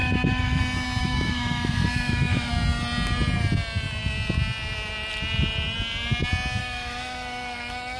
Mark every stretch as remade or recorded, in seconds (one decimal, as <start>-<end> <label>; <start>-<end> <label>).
0.0-0.6 remade; 0.6-1.0 recorded; 1.0-2.5 remade; 2.5-6.6 recorded; 6.6-8.0 remade